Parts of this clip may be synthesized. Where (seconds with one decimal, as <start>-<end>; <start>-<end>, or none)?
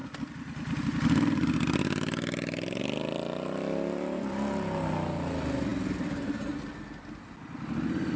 none